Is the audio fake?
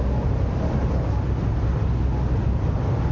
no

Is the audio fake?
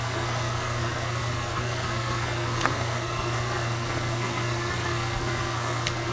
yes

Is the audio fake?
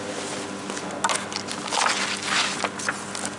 no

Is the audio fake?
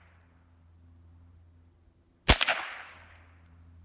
no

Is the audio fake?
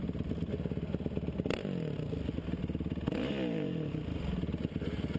no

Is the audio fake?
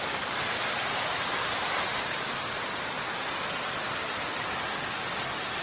no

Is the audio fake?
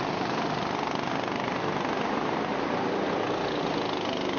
no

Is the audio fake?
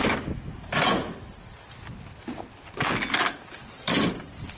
no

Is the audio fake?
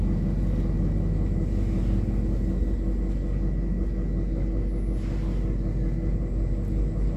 no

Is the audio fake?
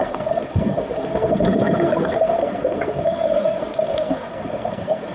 yes